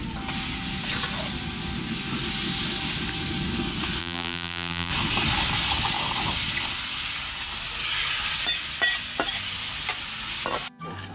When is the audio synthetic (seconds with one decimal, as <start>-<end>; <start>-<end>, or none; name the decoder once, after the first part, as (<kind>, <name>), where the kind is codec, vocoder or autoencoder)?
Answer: 4.0-4.9 (vocoder, BigVGAN v2)